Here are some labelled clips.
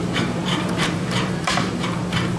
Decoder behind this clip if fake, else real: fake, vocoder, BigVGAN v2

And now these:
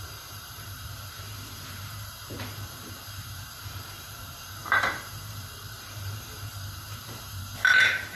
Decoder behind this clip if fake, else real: fake, vocoder, BigVGAN v2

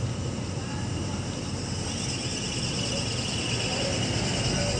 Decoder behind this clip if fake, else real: real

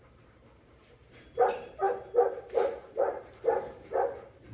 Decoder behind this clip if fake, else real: fake, vocoder, BigVGAN v2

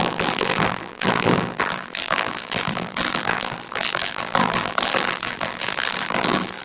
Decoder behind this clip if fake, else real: fake, vocoder, BigVGAN v2